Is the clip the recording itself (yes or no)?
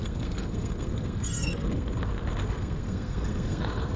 no